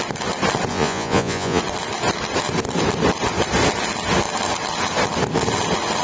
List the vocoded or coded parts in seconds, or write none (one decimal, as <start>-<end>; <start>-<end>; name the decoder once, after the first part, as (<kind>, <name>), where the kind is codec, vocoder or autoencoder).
0.7-1.6 (vocoder, Vocos)